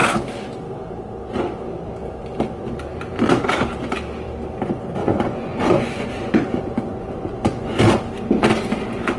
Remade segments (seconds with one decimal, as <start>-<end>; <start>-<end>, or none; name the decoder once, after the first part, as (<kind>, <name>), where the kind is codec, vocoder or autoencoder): 5.0-7.8 (vocoder, Vocos)